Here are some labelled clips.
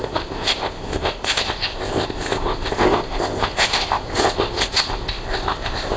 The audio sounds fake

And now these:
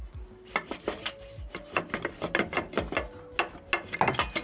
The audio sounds real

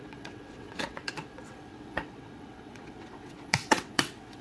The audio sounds fake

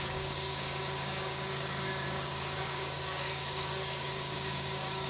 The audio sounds fake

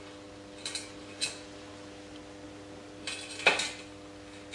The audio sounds real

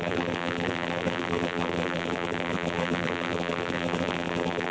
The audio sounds fake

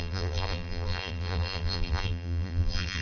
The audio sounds fake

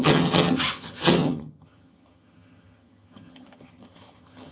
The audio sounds fake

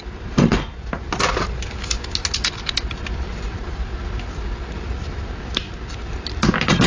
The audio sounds real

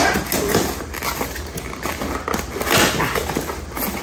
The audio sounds real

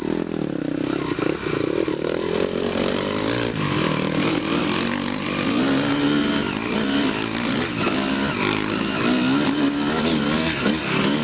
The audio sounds real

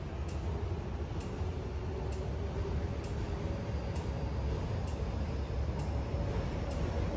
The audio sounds real